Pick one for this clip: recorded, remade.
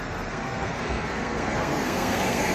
remade